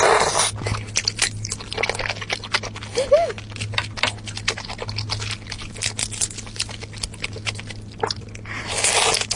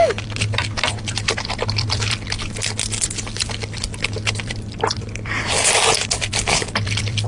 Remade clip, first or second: second